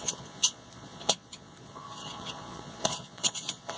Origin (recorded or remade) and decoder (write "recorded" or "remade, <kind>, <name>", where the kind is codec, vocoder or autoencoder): remade, vocoder, Vocos